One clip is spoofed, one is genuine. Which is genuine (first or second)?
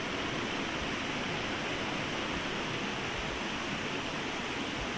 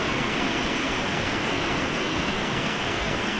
first